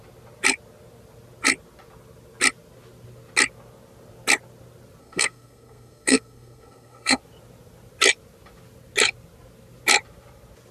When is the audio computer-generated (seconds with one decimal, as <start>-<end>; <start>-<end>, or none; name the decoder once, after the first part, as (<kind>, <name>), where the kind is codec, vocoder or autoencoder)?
5.0-7.2 (codec, SNAC)